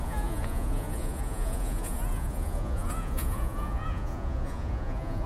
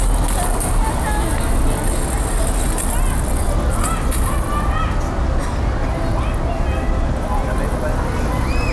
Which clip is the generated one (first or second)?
first